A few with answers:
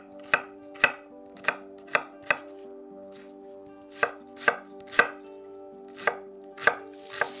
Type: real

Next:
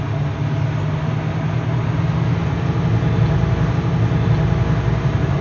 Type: real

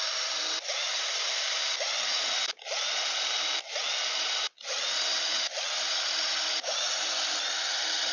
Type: fake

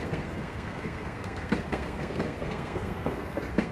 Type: fake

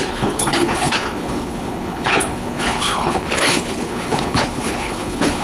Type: fake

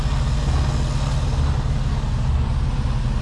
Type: real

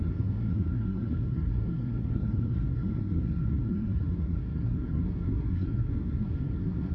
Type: fake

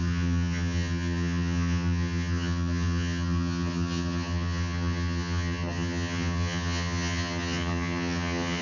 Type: fake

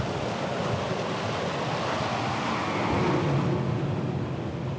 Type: real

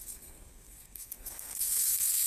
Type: fake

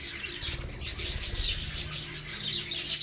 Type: real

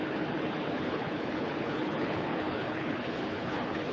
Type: fake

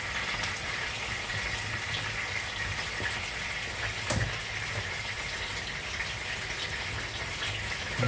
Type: real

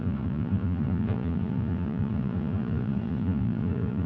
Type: fake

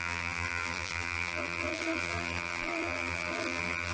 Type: fake